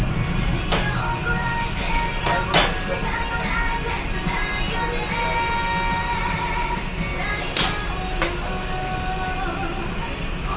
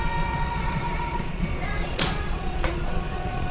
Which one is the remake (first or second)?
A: second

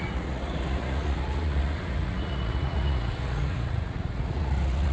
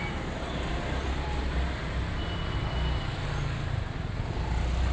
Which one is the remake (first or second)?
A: first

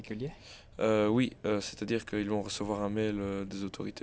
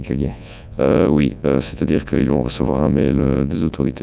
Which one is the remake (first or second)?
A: second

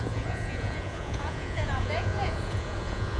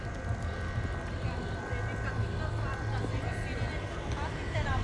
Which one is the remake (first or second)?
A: first